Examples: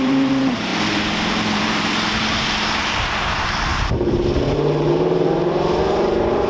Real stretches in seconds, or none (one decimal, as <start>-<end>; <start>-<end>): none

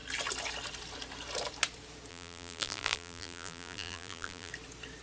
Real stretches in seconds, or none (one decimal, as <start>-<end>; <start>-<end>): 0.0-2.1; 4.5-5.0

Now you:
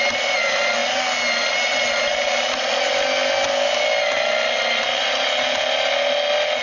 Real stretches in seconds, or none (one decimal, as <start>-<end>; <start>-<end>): 0.0-6.6